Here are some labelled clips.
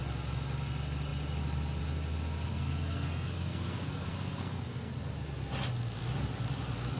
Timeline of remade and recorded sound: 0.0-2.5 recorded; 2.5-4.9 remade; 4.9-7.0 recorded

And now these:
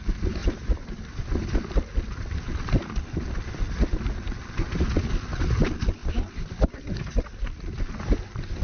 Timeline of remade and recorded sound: 0.0-8.6 recorded

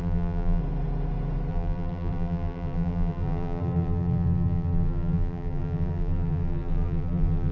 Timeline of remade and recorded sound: 0.0-0.6 remade; 0.6-1.5 recorded; 1.5-7.5 remade